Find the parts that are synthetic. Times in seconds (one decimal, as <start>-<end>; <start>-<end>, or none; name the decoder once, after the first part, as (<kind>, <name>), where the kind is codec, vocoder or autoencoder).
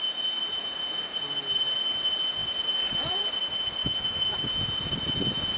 none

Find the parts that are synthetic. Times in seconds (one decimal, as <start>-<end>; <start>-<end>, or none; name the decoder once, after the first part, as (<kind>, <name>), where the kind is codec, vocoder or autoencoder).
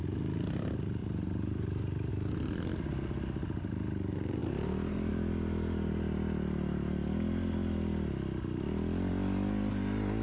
1.0-2.1 (vocoder, BigVGAN v2); 4.4-5.1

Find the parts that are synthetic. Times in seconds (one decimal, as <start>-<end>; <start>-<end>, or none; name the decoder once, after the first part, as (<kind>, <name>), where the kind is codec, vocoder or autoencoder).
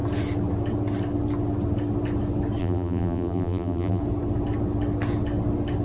2.6-4.0 (vocoder, BigVGAN v2)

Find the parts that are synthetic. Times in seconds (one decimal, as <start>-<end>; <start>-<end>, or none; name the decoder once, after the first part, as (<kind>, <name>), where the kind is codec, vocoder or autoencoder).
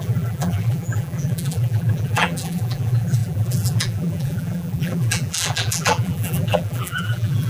0.0-7.5 (vocoder, BigVGAN v2)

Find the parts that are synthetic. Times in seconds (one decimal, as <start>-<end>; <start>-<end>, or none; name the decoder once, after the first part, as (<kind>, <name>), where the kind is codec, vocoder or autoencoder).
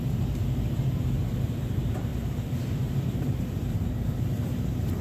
0.0-5.0 (vocoder, BigVGAN v2)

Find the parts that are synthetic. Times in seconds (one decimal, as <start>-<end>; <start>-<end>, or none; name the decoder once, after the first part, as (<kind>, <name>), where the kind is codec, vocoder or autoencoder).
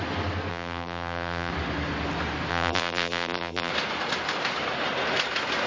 0.5-1.5 (vocoder, BigVGAN v2); 2.5-3.7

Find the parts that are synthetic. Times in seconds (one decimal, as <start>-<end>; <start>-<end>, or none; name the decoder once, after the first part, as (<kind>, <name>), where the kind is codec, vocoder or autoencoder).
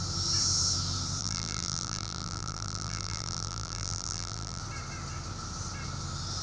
1.2-4.6 (vocoder, BigVGAN v2)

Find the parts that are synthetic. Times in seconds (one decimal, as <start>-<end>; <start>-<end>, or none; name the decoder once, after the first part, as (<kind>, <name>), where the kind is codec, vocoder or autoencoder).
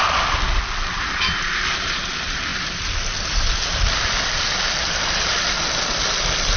2.5-4.4 (vocoder, BigVGAN v2)